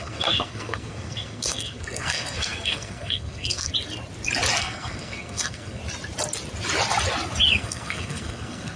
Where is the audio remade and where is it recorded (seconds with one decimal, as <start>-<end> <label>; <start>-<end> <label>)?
0.0-3.7 remade; 3.7-4.6 recorded; 4.6-5.8 remade; 5.8-7.5 recorded; 7.5-8.8 remade